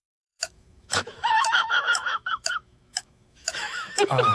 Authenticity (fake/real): fake